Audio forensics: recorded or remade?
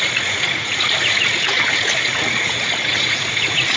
remade